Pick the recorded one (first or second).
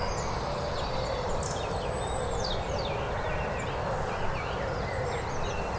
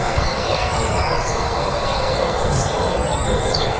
first